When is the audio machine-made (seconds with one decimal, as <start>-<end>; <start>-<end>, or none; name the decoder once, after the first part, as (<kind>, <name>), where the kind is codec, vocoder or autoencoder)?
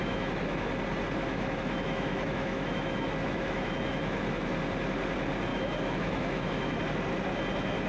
0.0-0.7 (autoencoder, DAC-VAE); 1.3-4.5; 5.5-6.8